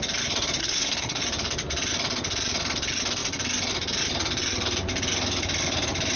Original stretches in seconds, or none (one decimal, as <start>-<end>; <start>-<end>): 0.0-0.6; 1.2-6.2